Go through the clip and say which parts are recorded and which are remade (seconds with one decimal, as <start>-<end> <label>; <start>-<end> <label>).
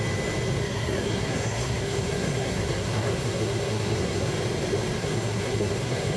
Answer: 0.0-0.6 recorded; 0.6-4.3 remade; 4.3-5.0 recorded; 5.0-6.2 remade